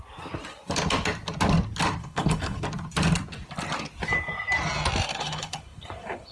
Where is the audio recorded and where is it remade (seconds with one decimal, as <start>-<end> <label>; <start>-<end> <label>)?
0.0-2.0 recorded; 2.0-2.6 remade; 2.6-5.1 recorded; 5.1-6.3 remade